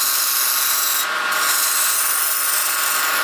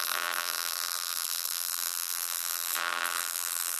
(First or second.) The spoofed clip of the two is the second